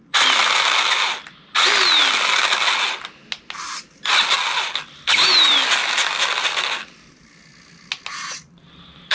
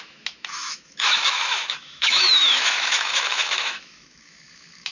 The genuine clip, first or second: first